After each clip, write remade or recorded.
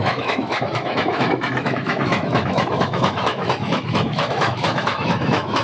remade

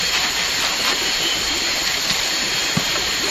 remade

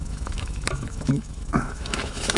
remade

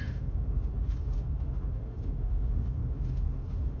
remade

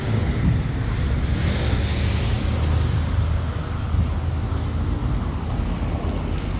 recorded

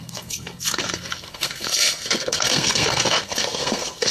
remade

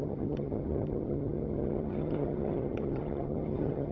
remade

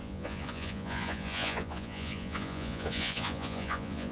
remade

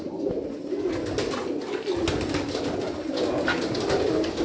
recorded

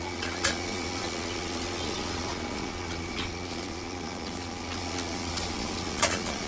remade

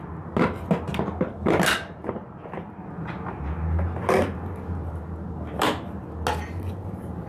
recorded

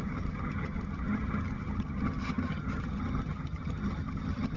remade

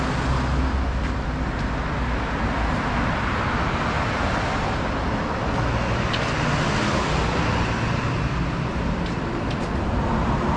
recorded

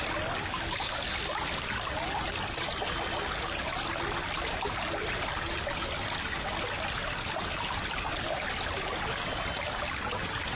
recorded